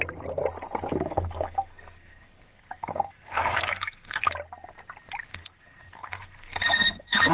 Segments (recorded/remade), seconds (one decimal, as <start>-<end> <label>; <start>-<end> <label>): 0.0-1.1 recorded; 1.1-4.2 remade; 4.2-5.3 recorded; 5.3-7.3 remade